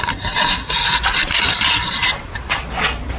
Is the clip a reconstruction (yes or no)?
no